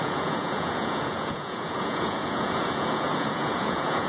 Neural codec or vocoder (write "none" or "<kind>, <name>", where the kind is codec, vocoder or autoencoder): vocoder, Vocos